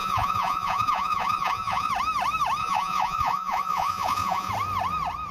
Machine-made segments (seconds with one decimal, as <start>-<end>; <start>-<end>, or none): 0.0-1.9; 2.6-4.5